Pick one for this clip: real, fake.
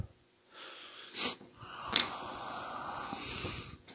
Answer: fake